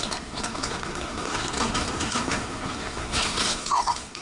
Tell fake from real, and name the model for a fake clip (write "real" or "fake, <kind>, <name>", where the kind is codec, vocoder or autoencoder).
fake, codec, SNAC